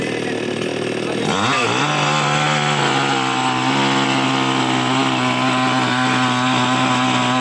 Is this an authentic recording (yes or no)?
yes